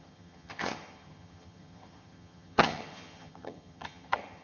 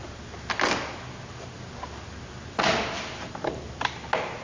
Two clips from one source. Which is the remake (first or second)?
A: first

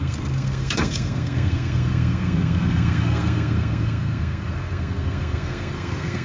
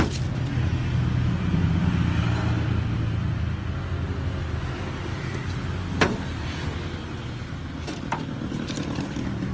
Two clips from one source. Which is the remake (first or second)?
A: first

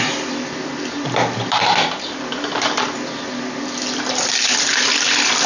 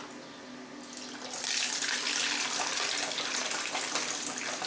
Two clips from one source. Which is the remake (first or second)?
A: first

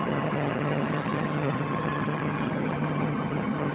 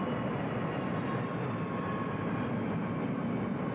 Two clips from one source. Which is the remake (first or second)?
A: first